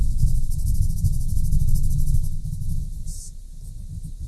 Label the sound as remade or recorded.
recorded